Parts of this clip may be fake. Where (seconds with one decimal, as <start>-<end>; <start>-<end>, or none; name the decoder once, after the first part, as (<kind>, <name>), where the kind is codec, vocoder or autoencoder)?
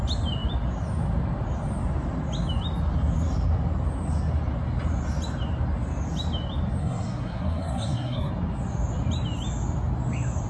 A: 6.8-8.3 (codec, SNAC)